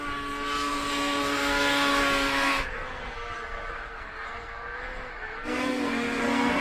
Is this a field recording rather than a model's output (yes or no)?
no